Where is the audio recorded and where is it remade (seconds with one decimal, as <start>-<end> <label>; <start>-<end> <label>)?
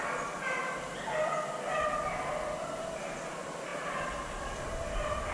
0.0-5.3 recorded